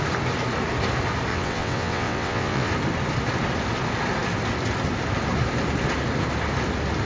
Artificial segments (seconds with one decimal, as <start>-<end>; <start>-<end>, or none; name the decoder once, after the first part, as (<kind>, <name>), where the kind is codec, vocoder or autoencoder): 1.3-2.7 (vocoder, WaveNeXt)